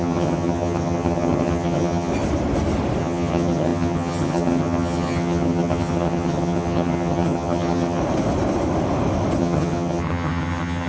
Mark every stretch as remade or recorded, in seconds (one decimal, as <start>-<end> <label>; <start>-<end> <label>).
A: 0.0-2.1 remade; 2.1-3.0 recorded; 3.0-8.0 remade; 8.0-9.4 recorded; 9.4-10.9 remade